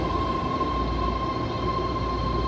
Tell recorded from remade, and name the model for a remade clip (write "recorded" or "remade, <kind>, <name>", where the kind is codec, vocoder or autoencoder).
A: recorded